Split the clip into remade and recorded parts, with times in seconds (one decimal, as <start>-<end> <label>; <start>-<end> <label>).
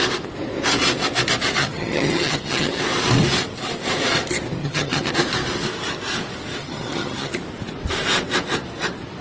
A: 0.0-1.6 recorded; 1.6-2.8 remade; 2.8-4.6 recorded; 4.6-5.1 remade; 5.1-6.6 recorded; 6.6-7.3 remade; 7.3-9.2 recorded